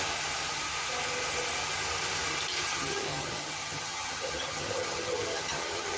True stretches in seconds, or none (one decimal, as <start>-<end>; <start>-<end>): 0.0-2.7